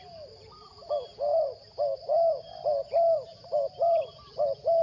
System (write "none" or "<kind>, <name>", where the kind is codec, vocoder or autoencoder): none